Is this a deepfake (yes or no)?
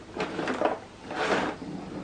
no